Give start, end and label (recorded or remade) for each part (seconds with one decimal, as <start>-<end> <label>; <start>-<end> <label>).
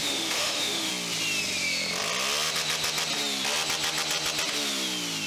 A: 0.0-0.9 remade; 0.9-5.3 recorded